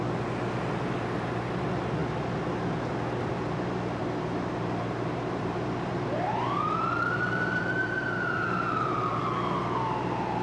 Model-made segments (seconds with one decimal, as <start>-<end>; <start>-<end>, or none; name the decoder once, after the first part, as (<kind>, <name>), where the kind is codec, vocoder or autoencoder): 4.0-9.2 (vocoder, BigVGAN v2)